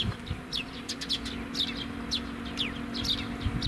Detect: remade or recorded recorded